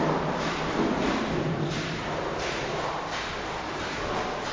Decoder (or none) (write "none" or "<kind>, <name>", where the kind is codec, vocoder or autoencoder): none